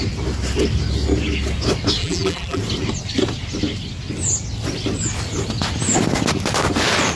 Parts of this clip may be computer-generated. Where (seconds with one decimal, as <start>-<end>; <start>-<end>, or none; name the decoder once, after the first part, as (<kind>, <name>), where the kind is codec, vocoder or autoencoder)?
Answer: 2.0-2.6 (vocoder, BigVGAN v2)